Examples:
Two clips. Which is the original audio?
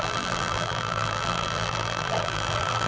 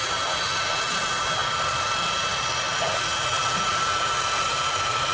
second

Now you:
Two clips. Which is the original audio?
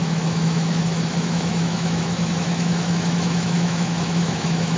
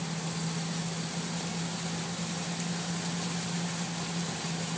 second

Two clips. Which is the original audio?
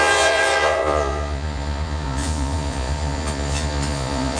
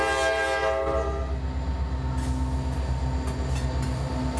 second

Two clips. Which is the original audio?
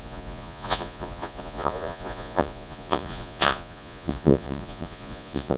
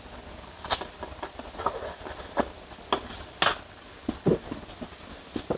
second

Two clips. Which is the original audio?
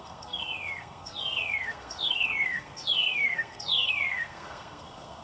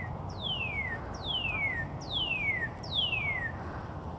second